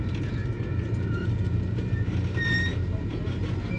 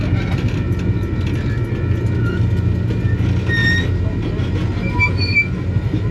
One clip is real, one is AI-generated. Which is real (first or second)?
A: second